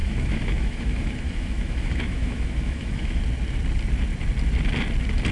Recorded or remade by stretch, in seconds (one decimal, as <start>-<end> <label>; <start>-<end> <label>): 0.0-3.2 remade; 3.2-5.3 recorded